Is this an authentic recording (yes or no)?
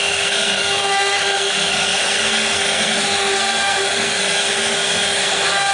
no